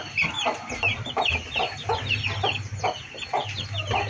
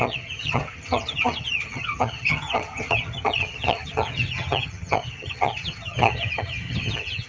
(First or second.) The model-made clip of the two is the second